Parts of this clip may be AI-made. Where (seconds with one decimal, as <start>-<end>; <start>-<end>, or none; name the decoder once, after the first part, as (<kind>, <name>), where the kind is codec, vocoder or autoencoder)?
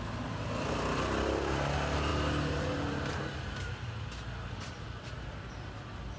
none